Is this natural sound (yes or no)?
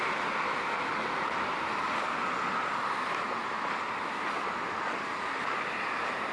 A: yes